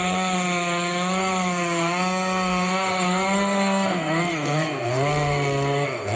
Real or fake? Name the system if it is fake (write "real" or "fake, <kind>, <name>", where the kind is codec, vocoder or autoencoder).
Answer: fake, codec, SNAC